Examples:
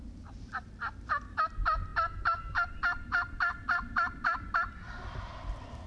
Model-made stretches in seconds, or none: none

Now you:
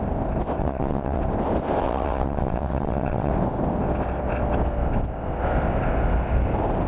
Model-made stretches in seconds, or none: 0.6-1.2 (vocoder, WaveNeXt); 1.8-3.3

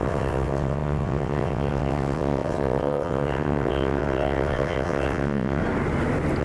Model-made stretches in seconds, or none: 0.0-5.6 (vocoder, WaveNeXt)